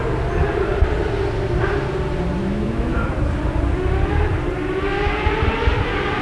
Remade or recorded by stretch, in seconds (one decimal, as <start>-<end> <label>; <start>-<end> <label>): 0.0-2.4 recorded; 2.4-3.0 remade; 3.0-6.2 recorded